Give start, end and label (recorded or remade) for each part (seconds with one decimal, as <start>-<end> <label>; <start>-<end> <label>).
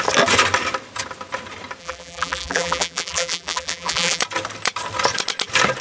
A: 0.0-1.8 recorded; 1.8-4.2 remade; 4.2-5.8 recorded